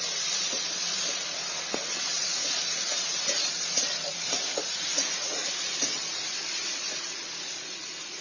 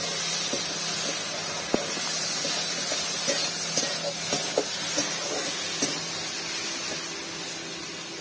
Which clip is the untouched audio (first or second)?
second